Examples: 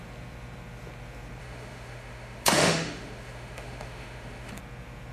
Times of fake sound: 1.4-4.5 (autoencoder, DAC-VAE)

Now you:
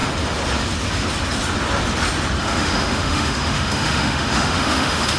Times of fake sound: 2.4-5.2 (autoencoder, DAC-VAE)

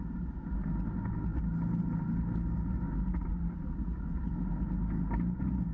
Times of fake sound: none

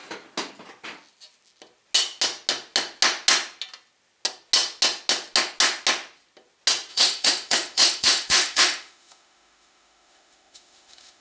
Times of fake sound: 6.9-11.2 (autoencoder, DAC-VAE)

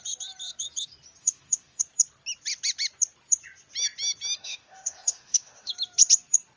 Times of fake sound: 1.2-1.8 (autoencoder, DAC-VAE); 4.4-5.7

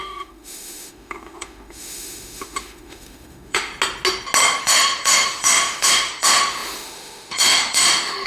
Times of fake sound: 0.0-3.7 (autoencoder, DAC-VAE); 4.6-8.3

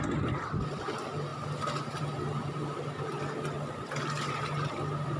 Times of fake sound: none

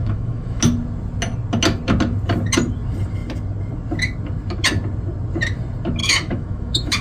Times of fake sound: 0.0-0.6 (autoencoder, DAC-VAE); 6.0-7.0